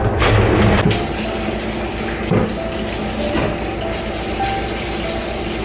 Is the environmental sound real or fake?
real